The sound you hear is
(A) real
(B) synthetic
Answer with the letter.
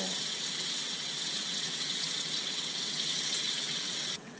B